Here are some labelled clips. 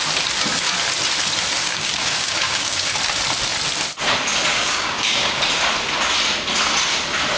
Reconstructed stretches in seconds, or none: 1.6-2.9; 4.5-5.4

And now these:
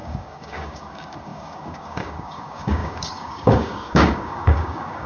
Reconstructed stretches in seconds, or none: 0.0-5.1

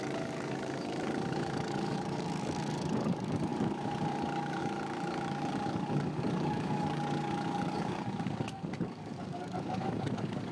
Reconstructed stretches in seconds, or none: 0.0-10.5

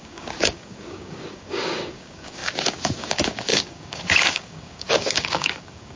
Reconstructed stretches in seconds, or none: 0.0-6.0

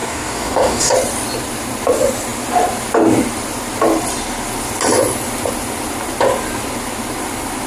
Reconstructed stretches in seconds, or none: 0.0-0.9

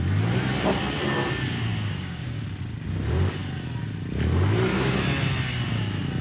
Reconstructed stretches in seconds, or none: 1.7-2.3